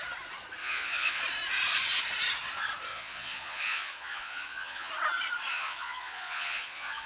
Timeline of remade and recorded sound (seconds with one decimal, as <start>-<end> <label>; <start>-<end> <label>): 0.0-0.6 recorded; 0.6-1.2 remade; 1.2-2.9 recorded; 2.9-4.9 remade; 4.9-5.5 recorded; 5.5-7.1 remade